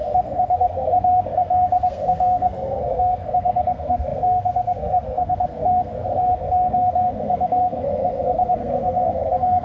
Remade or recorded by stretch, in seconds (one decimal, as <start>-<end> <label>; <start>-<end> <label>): 0.0-9.6 remade